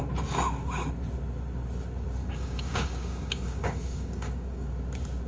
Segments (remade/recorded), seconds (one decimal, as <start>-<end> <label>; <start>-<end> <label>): 0.0-2.2 recorded; 2.2-4.7 remade; 4.7-5.3 recorded